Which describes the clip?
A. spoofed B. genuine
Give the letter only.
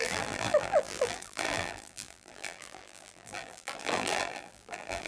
A